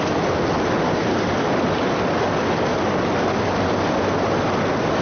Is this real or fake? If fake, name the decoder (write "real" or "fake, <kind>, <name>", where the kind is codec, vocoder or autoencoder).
real